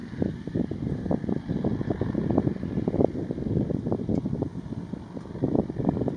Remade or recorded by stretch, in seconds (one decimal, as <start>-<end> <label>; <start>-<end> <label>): 0.0-0.6 remade; 0.6-1.7 recorded; 1.7-2.8 remade; 2.8-4.5 recorded; 4.5-5.3 remade; 5.3-6.2 recorded